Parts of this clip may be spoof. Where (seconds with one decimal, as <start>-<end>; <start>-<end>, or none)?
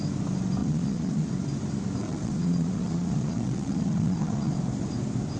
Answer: 0.6-1.3; 2.0-4.5